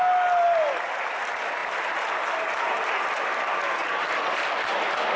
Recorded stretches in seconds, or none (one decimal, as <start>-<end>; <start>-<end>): 0.0-5.2